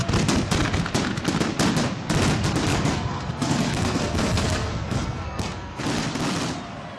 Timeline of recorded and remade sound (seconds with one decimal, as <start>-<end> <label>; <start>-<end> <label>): 0.0-2.7 recorded; 2.7-5.8 remade; 5.8-7.0 recorded